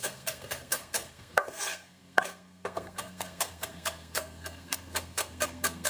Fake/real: fake